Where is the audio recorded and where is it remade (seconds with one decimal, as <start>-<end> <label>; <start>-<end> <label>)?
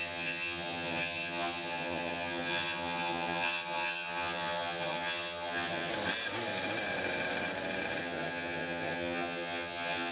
0.0-5.9 remade; 5.9-8.0 recorded; 8.0-10.1 remade